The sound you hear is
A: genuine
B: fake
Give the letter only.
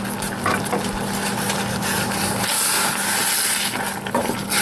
A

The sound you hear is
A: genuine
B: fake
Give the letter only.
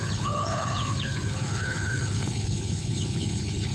B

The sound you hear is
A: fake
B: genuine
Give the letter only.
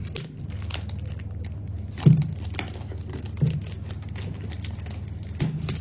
B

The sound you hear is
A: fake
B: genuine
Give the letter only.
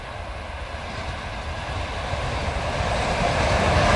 B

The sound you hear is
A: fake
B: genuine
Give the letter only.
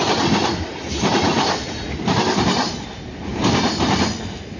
B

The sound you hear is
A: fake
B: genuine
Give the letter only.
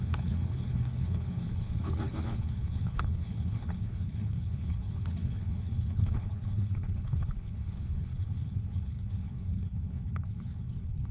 A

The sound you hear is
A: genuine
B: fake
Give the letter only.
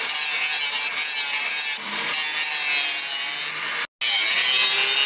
A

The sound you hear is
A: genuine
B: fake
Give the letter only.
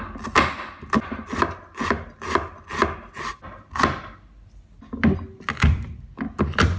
A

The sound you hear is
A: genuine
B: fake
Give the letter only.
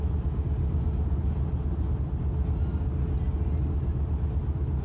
A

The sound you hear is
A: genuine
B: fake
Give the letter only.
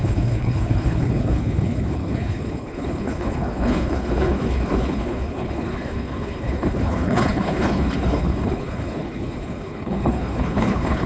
B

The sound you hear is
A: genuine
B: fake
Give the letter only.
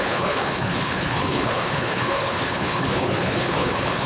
B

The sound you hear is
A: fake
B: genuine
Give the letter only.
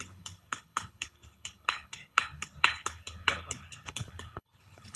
A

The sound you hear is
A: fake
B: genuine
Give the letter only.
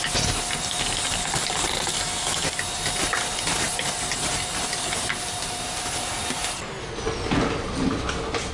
B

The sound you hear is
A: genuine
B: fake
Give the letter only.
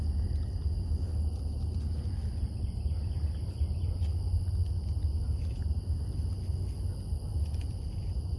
A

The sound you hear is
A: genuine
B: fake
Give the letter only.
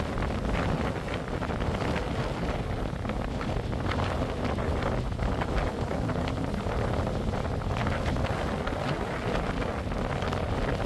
A